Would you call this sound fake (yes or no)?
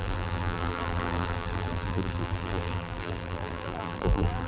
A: yes